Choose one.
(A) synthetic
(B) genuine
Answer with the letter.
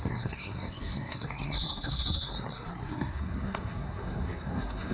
A